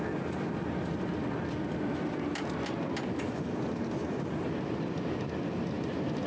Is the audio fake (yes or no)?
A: no